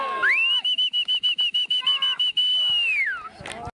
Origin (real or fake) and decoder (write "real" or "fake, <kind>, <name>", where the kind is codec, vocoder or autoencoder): real